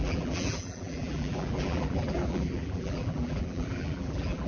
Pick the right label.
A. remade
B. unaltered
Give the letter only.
A